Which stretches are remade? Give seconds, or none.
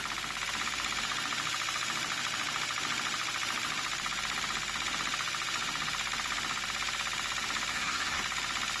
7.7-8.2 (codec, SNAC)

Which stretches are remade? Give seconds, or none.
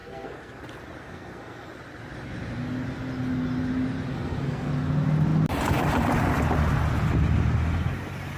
0.0-0.6 (codec, SNAC); 1.0-1.7; 4.1-4.7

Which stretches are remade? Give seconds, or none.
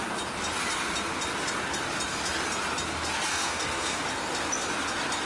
3.3-4.0 (codec, SNAC)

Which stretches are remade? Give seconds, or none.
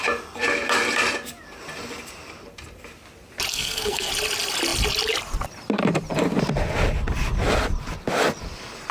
3.5-4.1 (codec, SNAC)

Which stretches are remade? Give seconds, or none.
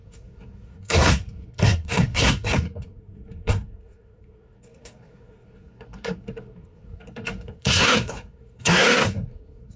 0.0-9.8 (codec, SNAC)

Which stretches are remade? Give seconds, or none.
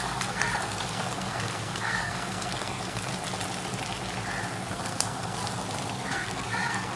0.0-3.1 (codec, SNAC); 4.7-5.4; 5.9-7.0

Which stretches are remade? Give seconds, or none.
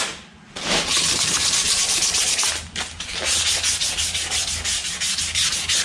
none